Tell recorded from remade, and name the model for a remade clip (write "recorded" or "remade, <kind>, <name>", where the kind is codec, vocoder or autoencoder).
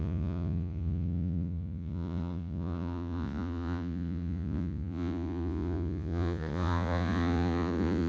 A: remade, vocoder, Vocos